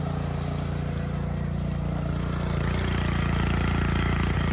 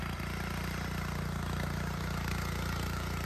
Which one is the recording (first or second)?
first